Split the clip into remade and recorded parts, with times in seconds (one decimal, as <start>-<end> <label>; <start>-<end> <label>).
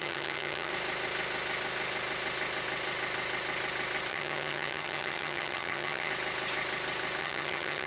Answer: 0.0-0.7 remade; 0.7-4.1 recorded; 4.1-6.1 remade; 6.1-7.2 recorded; 7.2-7.9 remade